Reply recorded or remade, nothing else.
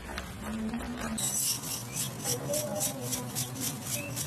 recorded